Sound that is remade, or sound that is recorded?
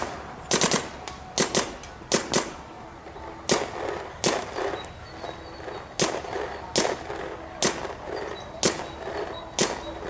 recorded